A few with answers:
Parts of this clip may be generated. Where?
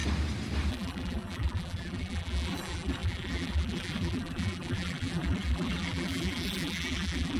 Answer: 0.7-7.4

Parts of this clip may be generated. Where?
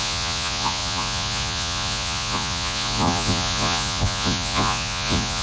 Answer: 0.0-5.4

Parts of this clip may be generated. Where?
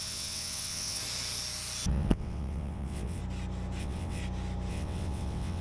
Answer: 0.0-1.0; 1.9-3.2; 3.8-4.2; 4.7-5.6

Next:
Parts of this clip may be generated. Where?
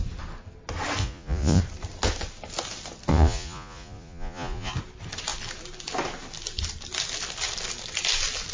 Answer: 1.0-1.6; 3.1-4.7